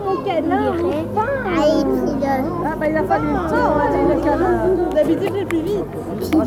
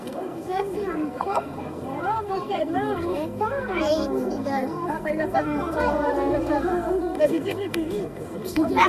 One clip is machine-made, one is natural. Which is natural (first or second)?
first